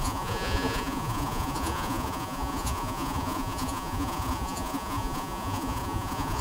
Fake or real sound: fake